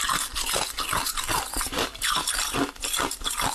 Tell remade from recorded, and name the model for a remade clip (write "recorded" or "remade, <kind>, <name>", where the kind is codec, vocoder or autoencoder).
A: recorded